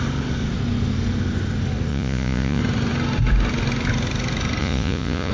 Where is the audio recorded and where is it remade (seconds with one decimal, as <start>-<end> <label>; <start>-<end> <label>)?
0.0-1.9 recorded; 1.9-2.6 remade; 2.6-4.6 recorded; 4.6-5.3 remade